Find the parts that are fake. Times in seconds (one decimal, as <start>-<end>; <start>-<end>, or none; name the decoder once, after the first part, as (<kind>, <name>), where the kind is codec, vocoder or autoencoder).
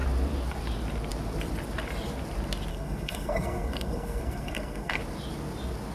2.7-5.0 (codec, SNAC)